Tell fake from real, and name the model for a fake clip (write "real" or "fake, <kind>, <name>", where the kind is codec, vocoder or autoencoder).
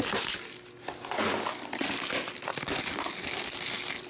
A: real